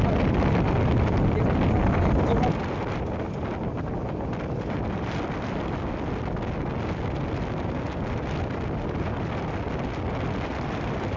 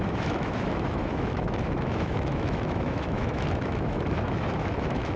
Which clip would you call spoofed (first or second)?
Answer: second